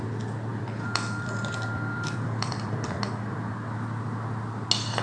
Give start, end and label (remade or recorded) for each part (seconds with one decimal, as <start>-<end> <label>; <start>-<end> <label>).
0.0-0.5 recorded; 0.5-3.5 remade; 3.5-5.0 recorded